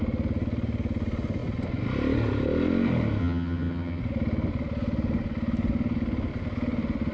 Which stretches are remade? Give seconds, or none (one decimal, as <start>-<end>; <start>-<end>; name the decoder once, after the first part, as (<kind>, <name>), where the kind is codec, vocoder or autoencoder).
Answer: 3.2-4.0 (vocoder, HiFi-GAN)